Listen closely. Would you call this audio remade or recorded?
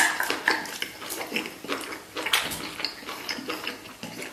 recorded